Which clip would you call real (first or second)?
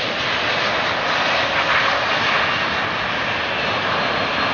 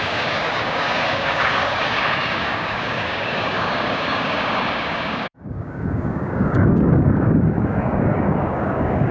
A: first